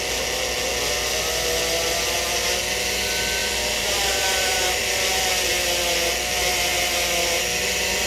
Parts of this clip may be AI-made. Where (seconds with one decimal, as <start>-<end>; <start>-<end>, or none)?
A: 3.4-4.8